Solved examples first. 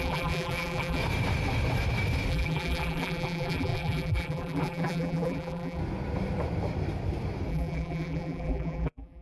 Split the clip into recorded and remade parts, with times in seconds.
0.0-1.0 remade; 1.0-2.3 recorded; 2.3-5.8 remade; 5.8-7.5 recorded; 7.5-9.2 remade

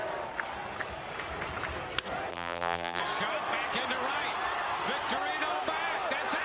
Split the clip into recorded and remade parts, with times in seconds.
0.0-2.3 recorded; 2.3-3.0 remade; 3.0-6.4 recorded

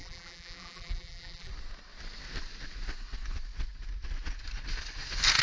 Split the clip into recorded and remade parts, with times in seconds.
0.0-1.5 remade; 1.5-5.4 recorded

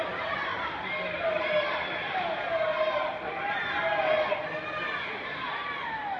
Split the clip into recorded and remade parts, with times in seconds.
0.0-3.8 remade; 3.8-5.2 recorded; 5.2-6.2 remade

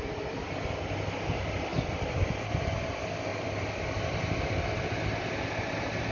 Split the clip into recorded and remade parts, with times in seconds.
0.0-3.3 recorded; 3.3-5.5 remade; 5.5-6.1 recorded

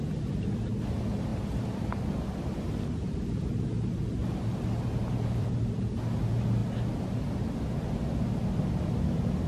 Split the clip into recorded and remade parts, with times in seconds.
0.0-1.3 recorded; 1.3-2.7 remade; 2.7-4.2 recorded; 4.2-5.5 remade; 5.5-9.5 recorded

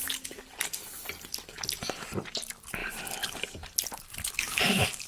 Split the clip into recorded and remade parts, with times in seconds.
0.0-2.8 remade; 2.8-4.6 recorded; 4.6-5.1 remade